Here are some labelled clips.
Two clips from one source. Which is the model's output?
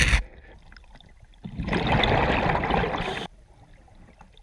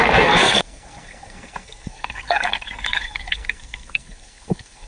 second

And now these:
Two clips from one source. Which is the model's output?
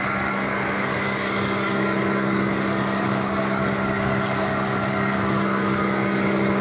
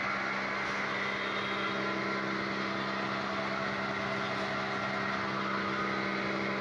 first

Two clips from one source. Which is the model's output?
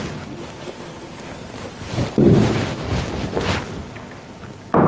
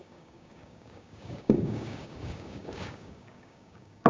second